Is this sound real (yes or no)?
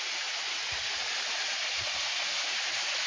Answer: no